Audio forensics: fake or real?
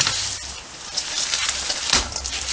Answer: real